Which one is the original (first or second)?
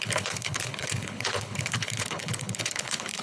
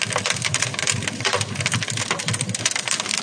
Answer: second